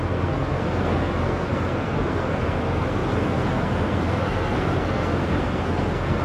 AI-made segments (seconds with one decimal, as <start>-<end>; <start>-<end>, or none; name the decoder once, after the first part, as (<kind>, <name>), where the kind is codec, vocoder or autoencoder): 0.0-6.2 (codec, SNAC)